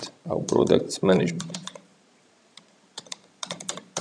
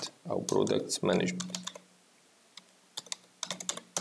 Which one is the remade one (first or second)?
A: first